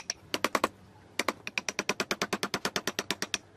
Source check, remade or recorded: recorded